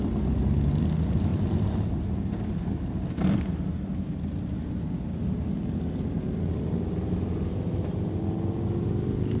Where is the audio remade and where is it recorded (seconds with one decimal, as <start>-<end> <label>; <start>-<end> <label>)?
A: 0.0-9.4 recorded